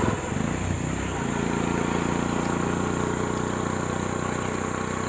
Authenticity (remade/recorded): recorded